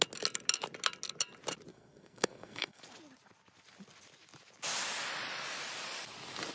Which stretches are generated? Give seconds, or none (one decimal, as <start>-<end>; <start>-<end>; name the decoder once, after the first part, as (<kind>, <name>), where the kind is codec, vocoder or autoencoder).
1.7-2.8 (codec, SNAC)